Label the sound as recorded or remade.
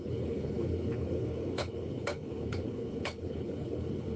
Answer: remade